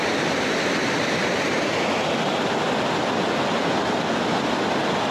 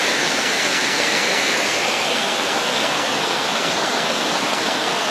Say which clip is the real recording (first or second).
first